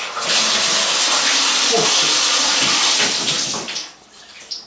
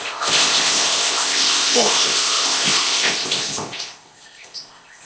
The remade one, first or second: second